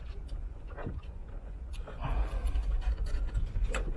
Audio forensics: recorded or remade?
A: remade